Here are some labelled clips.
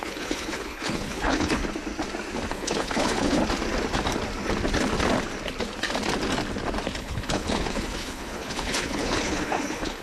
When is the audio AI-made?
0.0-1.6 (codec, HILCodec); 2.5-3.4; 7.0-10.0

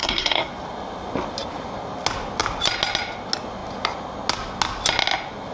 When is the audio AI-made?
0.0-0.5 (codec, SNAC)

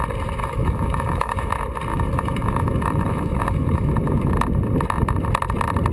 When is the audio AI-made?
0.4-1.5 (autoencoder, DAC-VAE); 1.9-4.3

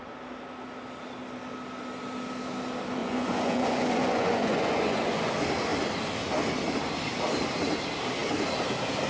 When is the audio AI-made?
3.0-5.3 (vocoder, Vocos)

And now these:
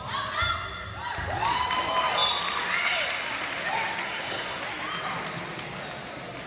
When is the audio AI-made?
4.0-4.6 (codec, SNAC)

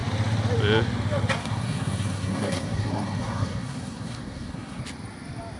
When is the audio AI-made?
1.4-4.8 (codec, SNAC)

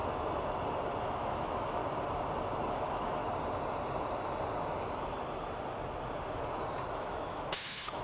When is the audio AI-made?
1.0-1.8 (autoencoder, DAC-VAE); 2.7-3.2; 6.9-8.0